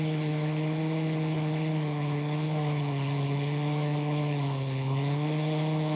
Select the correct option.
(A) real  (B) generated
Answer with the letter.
B